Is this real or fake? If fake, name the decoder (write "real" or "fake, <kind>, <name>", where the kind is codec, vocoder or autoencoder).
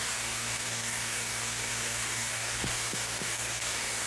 fake, codec, DAC